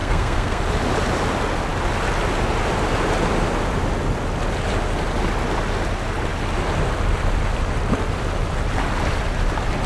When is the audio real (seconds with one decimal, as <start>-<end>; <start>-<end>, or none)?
0.6-9.9